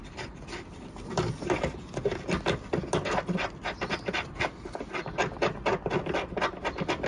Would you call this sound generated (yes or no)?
no